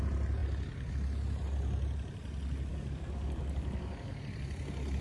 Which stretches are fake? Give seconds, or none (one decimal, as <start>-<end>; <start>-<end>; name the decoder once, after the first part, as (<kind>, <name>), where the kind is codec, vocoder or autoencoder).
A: 2.7-4.2 (codec, DAC)